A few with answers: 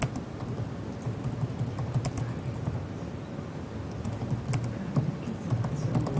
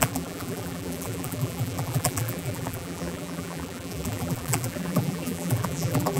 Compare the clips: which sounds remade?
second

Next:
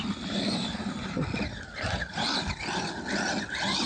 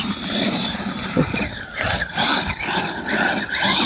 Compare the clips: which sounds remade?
second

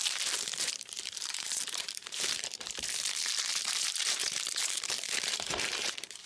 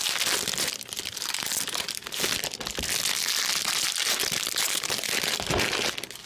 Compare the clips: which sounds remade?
first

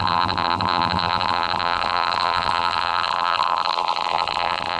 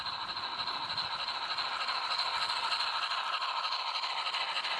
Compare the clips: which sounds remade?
first